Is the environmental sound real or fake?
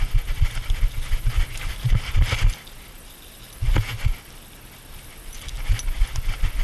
real